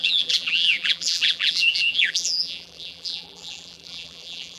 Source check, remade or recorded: remade